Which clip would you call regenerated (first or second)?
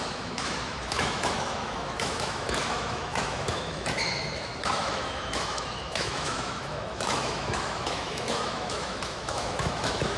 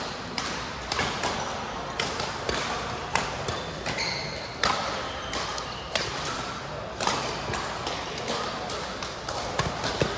first